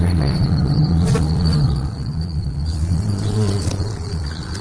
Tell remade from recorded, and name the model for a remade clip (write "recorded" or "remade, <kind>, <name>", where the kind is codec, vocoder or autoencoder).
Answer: remade, vocoder, Vocos